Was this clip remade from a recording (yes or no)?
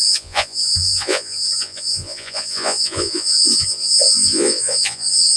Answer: yes